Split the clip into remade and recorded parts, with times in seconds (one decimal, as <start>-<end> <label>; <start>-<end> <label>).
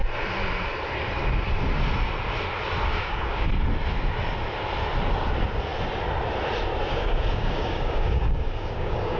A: 0.0-2.9 recorded; 2.9-3.5 remade; 3.5-6.9 recorded; 6.9-9.2 remade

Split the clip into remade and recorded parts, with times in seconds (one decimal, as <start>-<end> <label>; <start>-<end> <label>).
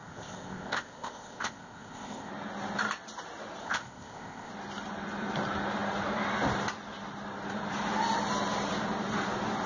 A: 0.0-2.3 remade; 2.3-3.6 recorded; 3.6-4.5 remade; 4.5-9.7 recorded